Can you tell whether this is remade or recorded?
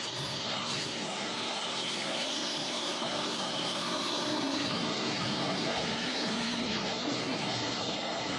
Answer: remade